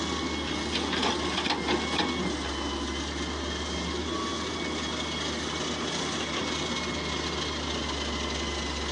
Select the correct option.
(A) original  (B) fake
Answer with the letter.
A